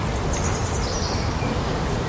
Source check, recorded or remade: recorded